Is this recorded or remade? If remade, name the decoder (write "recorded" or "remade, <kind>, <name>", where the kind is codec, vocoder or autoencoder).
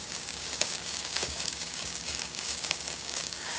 remade, codec, DAC